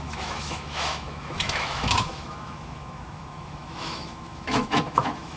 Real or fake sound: fake